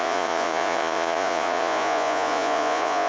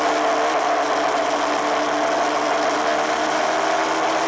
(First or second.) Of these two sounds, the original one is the second